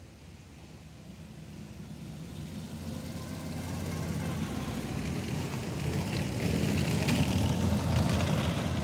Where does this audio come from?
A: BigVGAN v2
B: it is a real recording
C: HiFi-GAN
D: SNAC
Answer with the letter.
B